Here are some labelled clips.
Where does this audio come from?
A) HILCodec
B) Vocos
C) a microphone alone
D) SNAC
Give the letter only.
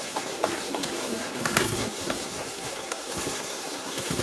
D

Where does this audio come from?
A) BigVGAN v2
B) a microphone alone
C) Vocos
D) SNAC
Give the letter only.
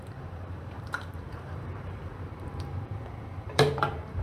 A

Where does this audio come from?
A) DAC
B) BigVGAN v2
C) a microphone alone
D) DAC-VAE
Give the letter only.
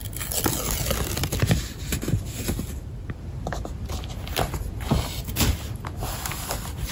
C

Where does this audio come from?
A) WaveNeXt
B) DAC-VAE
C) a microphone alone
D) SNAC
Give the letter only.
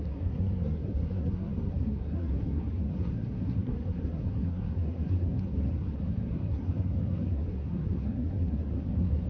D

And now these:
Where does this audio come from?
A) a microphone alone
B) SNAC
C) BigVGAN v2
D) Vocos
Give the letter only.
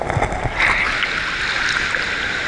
A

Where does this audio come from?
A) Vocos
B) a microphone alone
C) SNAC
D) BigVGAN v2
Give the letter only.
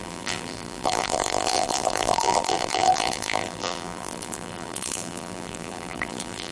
D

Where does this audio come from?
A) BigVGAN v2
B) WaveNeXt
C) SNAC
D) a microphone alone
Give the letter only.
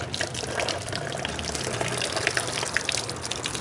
A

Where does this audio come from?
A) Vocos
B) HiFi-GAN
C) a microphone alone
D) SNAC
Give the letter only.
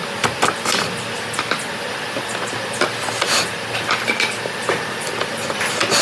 C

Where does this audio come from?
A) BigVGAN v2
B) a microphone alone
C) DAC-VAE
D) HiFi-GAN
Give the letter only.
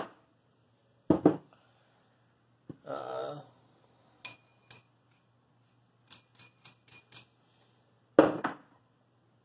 B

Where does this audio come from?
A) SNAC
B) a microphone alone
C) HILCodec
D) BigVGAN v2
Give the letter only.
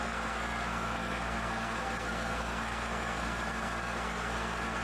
A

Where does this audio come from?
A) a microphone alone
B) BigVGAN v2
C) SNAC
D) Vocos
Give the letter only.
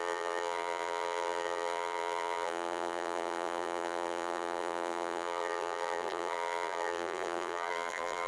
B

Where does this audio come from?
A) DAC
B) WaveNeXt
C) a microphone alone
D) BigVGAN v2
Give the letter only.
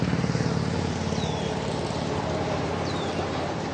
D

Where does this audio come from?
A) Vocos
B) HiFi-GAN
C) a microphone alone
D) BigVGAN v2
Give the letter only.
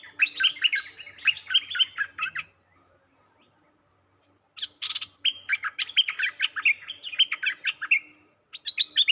C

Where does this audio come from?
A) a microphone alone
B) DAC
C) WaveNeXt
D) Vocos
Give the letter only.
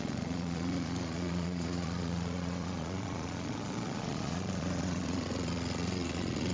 D